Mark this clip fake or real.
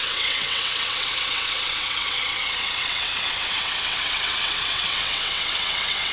fake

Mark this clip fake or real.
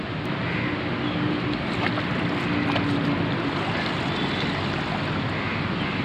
real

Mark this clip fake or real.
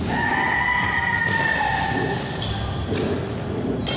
real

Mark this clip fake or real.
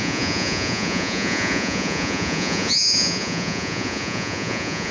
fake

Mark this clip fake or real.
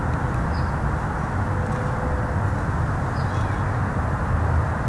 real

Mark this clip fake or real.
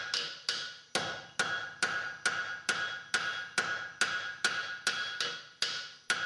real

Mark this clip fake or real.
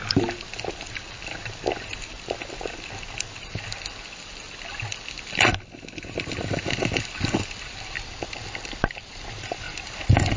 real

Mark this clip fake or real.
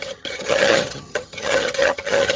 fake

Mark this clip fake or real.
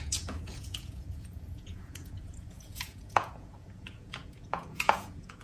fake